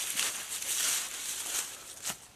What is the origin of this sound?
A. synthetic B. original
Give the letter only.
B